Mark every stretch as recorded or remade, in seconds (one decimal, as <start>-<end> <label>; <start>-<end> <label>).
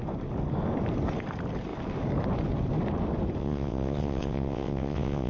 0.0-3.4 recorded; 3.4-5.3 remade